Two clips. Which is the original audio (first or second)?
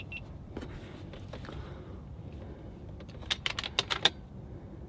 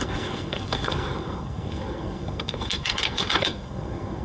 first